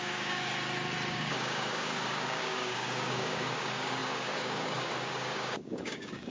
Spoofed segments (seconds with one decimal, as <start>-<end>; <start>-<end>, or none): 0.0-0.5; 1.1-6.3